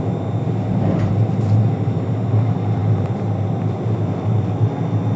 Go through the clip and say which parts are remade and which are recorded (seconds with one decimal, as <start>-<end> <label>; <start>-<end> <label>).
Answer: 0.0-5.2 recorded